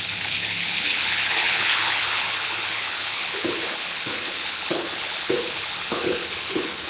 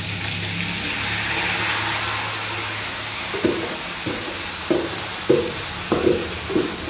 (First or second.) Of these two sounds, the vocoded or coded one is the first